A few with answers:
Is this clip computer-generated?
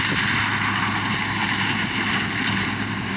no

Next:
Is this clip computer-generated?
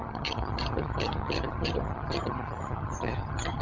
yes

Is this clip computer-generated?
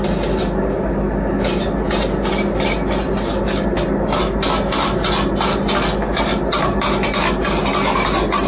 no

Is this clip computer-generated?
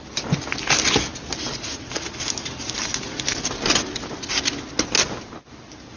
no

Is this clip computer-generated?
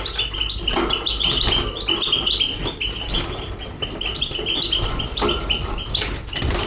no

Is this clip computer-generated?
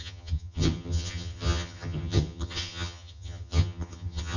yes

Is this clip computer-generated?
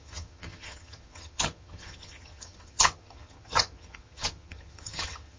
yes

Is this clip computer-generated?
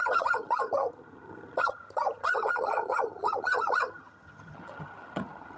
yes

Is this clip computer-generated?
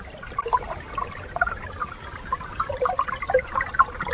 no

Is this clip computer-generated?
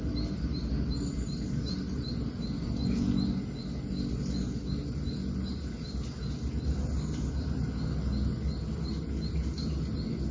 no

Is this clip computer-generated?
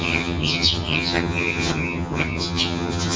yes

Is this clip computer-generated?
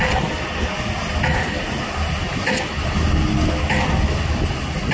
no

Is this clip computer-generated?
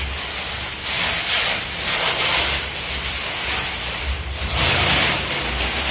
no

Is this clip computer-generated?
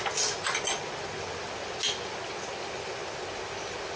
no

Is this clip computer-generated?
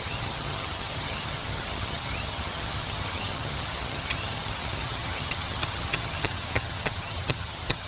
yes